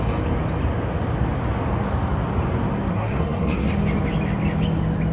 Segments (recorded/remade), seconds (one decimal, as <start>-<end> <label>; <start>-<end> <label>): 0.0-2.9 recorded; 2.9-3.7 remade; 3.7-5.1 recorded